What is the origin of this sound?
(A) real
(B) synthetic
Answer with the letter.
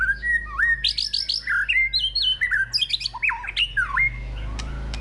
A